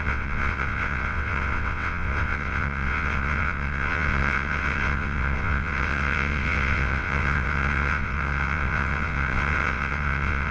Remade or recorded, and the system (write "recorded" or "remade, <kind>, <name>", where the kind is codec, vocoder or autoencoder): remade, vocoder, WaveNeXt